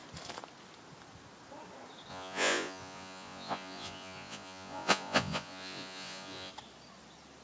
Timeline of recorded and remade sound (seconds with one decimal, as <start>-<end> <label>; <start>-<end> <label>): 0.0-2.1 recorded; 2.1-6.5 remade; 6.5-7.4 recorded